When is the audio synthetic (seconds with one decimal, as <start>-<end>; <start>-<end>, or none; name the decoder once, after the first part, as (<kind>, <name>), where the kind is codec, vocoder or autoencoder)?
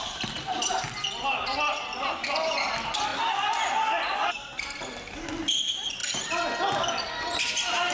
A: none